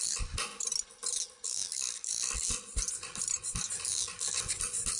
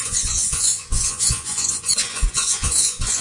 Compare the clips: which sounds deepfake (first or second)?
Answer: second